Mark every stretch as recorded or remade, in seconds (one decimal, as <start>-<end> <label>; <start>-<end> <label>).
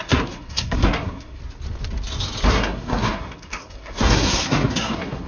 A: 0.0-1.4 remade; 1.4-2.5 recorded; 2.5-5.3 remade